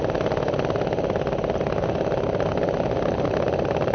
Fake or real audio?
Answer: real